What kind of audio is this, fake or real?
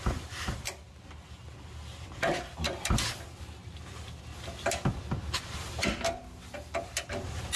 real